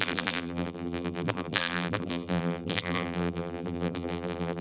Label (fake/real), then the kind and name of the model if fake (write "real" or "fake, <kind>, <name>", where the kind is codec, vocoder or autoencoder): fake, vocoder, BigVGAN v2